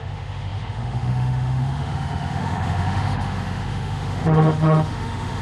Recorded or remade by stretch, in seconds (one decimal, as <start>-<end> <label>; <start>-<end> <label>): 0.0-5.4 remade